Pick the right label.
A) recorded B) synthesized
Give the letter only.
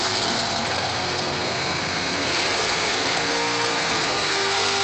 B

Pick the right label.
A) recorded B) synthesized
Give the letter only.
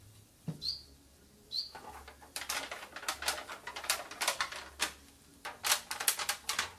A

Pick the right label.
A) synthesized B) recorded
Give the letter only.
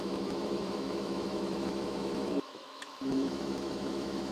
A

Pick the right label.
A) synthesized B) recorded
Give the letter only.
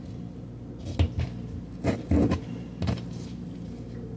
B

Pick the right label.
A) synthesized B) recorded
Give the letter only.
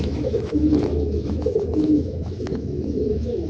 A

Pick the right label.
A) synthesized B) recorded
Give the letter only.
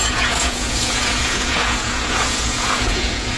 A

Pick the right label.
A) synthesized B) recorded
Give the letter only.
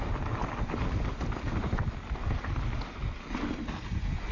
B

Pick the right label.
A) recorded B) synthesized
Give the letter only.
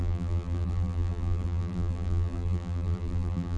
B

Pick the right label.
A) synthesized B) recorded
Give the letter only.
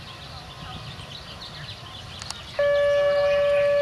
B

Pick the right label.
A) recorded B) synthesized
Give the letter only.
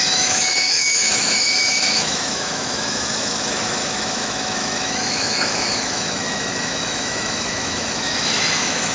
B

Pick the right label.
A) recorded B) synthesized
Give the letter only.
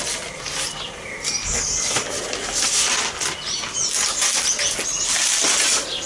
A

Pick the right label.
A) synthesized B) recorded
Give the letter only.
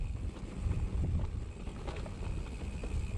B